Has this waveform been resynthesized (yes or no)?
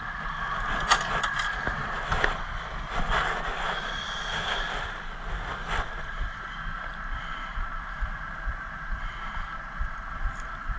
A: no